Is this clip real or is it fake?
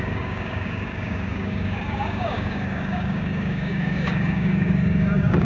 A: fake